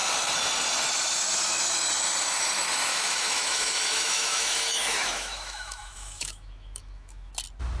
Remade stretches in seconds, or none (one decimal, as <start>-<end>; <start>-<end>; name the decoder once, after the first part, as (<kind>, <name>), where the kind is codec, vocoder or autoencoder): 2.9-7.3 (autoencoder, DAC-VAE)